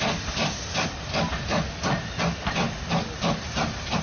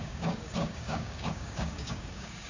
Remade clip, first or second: second